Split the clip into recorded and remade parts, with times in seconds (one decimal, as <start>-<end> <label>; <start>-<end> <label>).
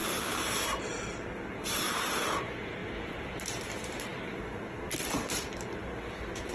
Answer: 0.0-6.5 remade